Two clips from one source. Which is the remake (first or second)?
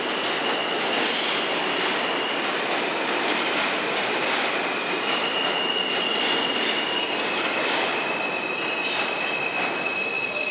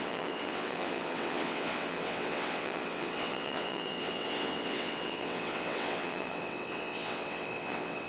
second